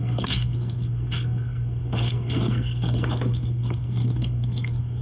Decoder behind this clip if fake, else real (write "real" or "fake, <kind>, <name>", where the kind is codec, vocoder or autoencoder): fake, codec, SNAC